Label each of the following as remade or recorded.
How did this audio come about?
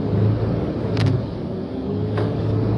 remade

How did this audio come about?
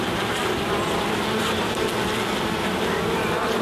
recorded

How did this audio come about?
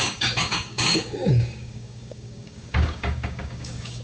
remade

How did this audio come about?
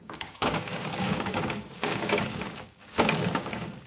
remade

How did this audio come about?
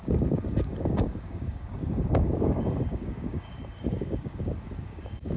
remade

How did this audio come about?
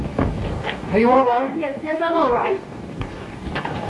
remade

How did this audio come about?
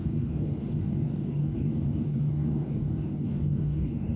remade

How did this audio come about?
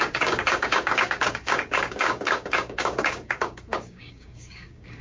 remade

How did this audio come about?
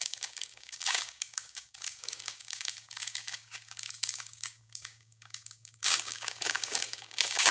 remade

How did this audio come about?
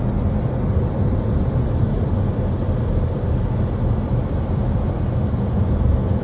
recorded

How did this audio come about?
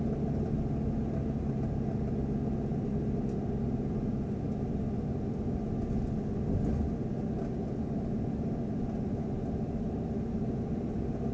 recorded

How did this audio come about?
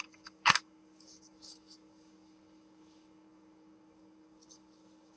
remade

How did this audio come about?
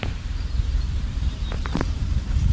recorded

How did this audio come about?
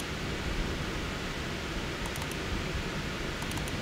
recorded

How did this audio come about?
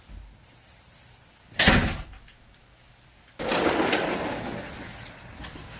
recorded